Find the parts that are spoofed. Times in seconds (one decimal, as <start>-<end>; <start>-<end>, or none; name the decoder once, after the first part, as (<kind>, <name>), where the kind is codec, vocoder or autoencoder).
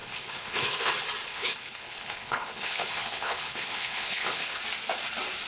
0.0-0.9 (codec, HILCodec); 1.3-4.6